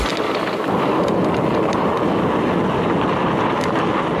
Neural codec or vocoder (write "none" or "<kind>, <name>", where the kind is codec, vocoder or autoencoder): none